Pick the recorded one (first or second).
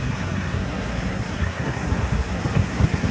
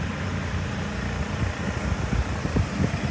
second